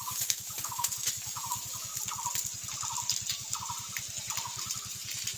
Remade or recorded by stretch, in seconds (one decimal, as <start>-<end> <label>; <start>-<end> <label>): 0.0-1.9 remade; 1.9-5.4 recorded